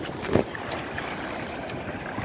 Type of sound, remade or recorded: recorded